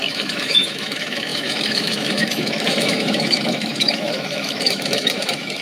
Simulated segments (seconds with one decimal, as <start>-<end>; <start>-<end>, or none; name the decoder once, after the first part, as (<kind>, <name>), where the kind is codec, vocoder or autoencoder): 0.0-5.6 (autoencoder, DAC-VAE)